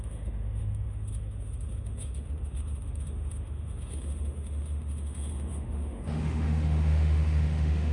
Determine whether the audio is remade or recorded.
remade